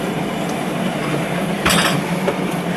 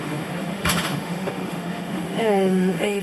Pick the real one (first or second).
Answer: first